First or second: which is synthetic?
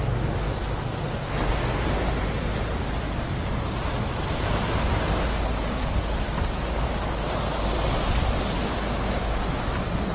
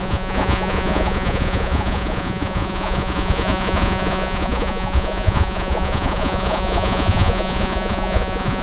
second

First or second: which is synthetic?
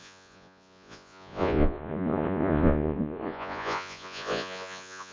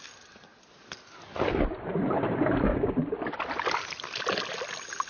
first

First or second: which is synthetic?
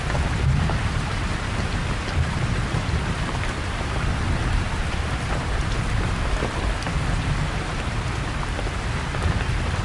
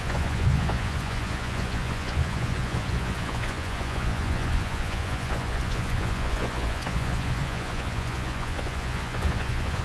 second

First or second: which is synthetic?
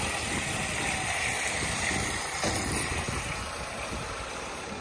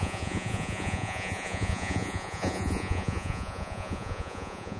second